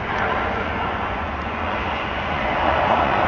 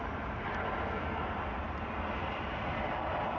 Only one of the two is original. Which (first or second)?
second